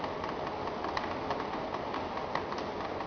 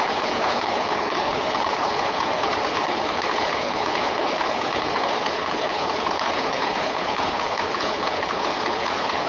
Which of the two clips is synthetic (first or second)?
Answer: second